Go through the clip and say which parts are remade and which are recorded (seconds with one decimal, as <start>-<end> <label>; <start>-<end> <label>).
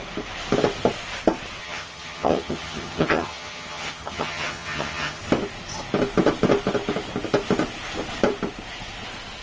0.0-1.6 recorded; 1.6-5.2 remade; 5.2-9.4 recorded